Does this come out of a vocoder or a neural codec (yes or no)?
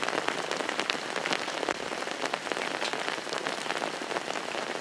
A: yes